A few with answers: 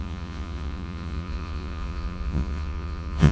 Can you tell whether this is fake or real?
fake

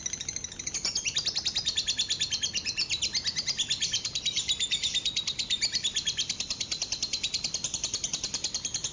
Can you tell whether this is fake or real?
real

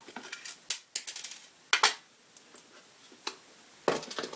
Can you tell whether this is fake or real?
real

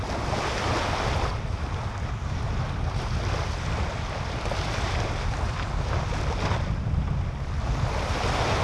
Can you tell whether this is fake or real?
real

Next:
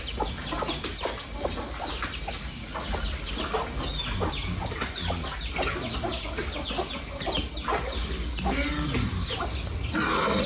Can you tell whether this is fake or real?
real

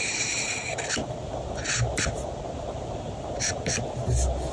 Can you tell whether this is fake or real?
real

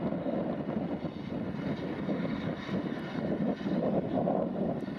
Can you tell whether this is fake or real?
real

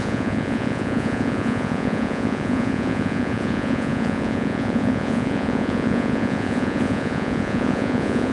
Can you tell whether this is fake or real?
fake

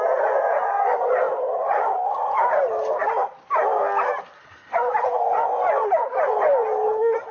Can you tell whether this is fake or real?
real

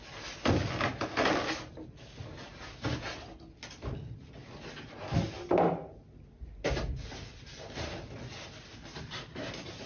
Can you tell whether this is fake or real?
real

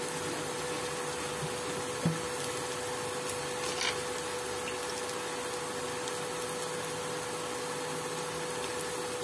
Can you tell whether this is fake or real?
real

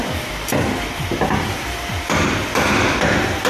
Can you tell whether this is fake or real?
fake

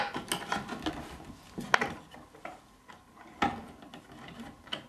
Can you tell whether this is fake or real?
real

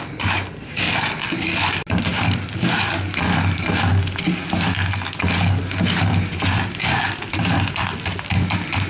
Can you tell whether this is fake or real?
real